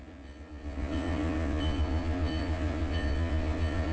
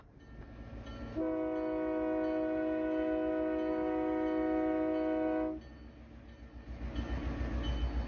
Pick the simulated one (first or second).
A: first